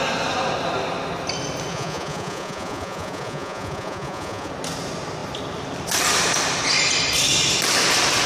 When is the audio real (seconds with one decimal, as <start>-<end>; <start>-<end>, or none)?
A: 0.0-1.7; 4.5-8.3